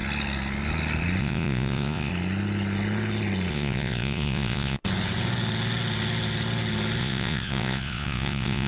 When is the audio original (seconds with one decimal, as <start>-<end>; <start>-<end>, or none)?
0.0-1.2; 2.1-3.5; 4.8-7.0